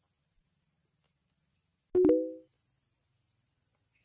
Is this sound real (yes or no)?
yes